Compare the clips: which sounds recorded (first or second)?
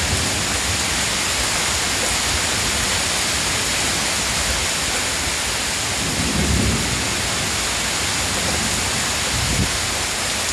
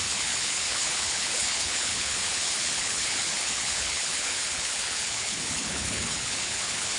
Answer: first